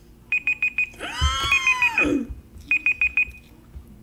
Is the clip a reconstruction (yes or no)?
no